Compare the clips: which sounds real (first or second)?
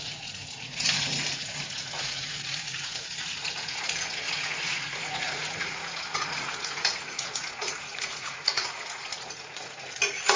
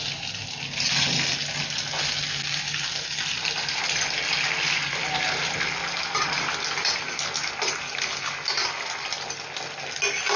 second